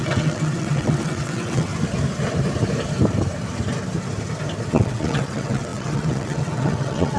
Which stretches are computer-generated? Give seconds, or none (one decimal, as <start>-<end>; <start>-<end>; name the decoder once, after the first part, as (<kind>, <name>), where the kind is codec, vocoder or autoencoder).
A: 0.0-1.7 (vocoder, WaveNeXt); 4.7-7.2